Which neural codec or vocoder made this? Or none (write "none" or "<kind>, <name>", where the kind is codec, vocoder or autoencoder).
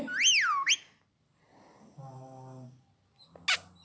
none